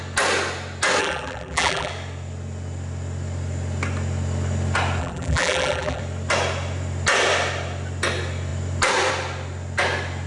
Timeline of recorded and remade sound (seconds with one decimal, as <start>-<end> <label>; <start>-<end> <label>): 0.0-1.0 recorded; 1.0-1.9 remade; 1.9-5.0 recorded; 5.0-6.0 remade; 6.0-10.3 recorded